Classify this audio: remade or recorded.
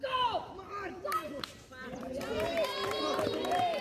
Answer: remade